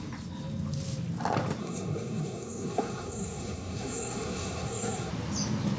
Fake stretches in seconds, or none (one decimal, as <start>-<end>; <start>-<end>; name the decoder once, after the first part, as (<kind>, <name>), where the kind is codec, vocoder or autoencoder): 1.6-5.1 (codec, SNAC)